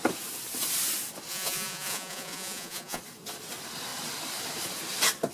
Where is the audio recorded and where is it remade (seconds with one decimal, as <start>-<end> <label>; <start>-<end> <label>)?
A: 0.0-1.3 recorded; 1.3-3.0 remade; 3.0-5.3 recorded